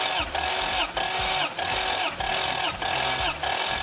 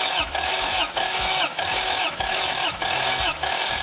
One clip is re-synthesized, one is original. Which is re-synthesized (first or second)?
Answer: second